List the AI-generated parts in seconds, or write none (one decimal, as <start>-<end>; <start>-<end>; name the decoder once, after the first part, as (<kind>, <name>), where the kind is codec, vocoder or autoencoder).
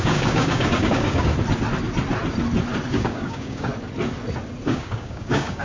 0.0-1.3 (codec, DAC); 2.9-3.7; 4.7-5.6